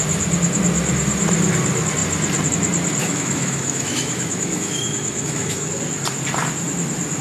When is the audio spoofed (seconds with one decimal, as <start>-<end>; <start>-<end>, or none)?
3.0-5.7